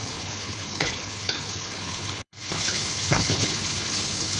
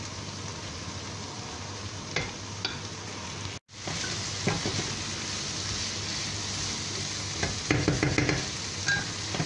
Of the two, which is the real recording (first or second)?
second